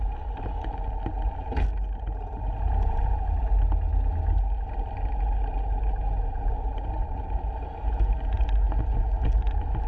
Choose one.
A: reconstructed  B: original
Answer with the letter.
B